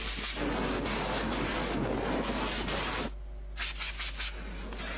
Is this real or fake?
real